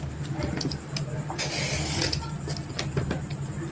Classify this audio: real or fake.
real